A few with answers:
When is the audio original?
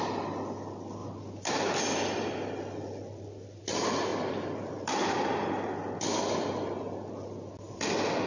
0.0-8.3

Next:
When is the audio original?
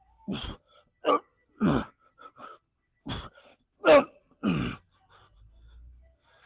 0.0-6.5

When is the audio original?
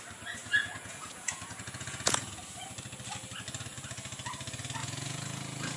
0.0-0.4; 2.4-4.8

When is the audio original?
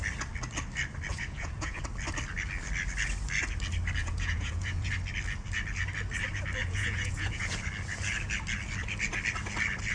0.0-1.1; 1.8-4.0; 4.9-6.6; 7.6-9.9